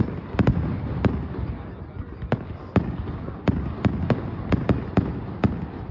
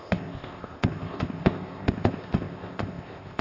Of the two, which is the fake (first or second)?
second